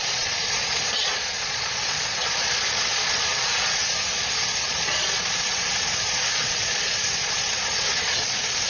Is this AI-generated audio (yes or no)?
yes